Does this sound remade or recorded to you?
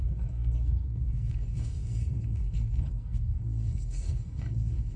remade